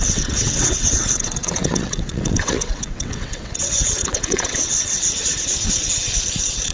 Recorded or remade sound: remade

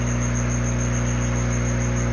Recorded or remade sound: recorded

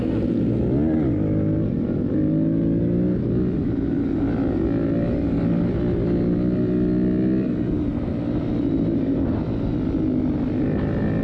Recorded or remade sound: recorded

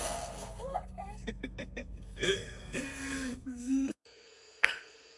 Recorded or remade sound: remade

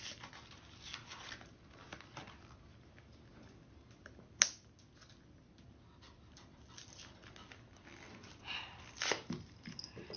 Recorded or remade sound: recorded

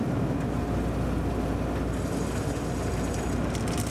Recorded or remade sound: recorded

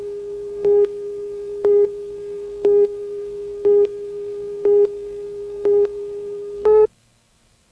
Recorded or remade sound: remade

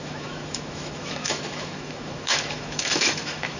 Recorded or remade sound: remade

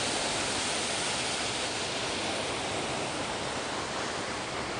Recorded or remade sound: recorded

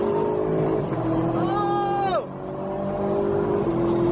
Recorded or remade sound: recorded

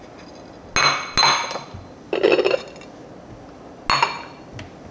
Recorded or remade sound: recorded